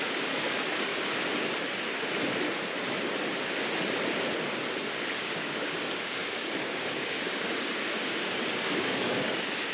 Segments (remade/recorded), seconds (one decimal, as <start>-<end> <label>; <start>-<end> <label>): 0.0-0.9 remade; 0.9-4.8 recorded; 4.8-9.7 remade